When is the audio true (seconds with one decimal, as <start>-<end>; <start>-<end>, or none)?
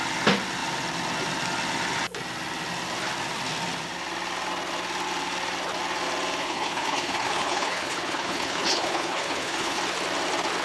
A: 0.0-6.4; 9.8-10.6